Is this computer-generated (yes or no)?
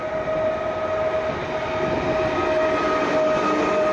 no